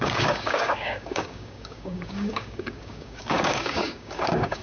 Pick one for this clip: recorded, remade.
remade